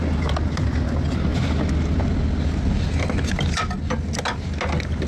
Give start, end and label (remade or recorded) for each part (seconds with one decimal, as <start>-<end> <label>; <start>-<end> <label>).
0.0-5.1 recorded